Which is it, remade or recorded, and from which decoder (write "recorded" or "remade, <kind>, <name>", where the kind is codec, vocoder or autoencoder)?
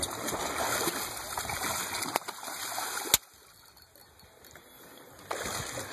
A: recorded